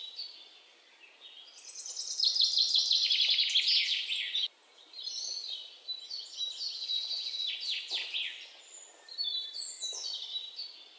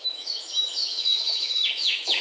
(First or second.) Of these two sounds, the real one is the first